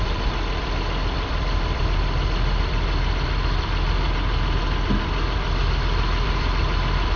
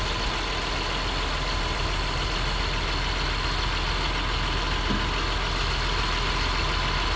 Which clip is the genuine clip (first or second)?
second